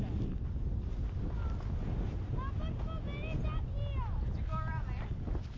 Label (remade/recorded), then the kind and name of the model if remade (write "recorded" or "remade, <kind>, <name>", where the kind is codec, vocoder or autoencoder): recorded